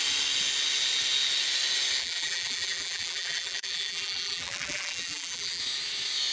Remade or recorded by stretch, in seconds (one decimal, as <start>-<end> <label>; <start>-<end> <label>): 0.0-2.0 recorded; 2.0-5.6 remade; 5.6-6.3 recorded

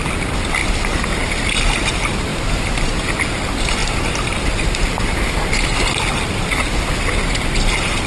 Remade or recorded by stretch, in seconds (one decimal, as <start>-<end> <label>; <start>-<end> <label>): 0.0-0.6 recorded; 0.6-1.1 remade; 1.1-2.3 recorded; 2.3-2.9 remade; 2.9-3.8 recorded; 3.8-5.5 remade; 5.5-8.1 recorded

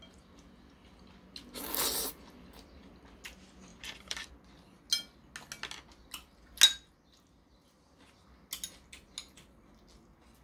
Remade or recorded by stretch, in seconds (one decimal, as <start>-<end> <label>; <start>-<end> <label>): 0.0-3.7 recorded; 3.7-4.3 remade; 4.3-10.4 recorded

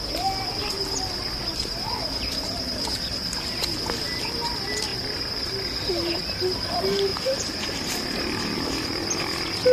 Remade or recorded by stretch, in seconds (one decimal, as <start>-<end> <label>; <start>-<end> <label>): 0.0-1.5 recorded; 1.5-2.6 remade; 2.6-7.1 recorded; 7.1-7.9 remade; 7.9-9.7 recorded

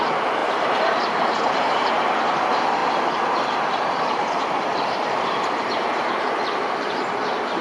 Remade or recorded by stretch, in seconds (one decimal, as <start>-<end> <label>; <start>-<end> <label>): 0.0-7.6 remade

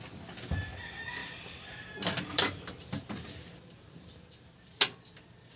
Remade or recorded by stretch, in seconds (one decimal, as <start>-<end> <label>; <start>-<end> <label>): 0.0-1.2 recorded; 1.2-1.9 remade; 1.9-2.3 recorded; 2.3-4.8 remade; 4.8-5.6 recorded